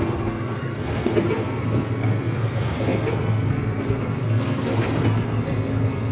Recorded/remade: remade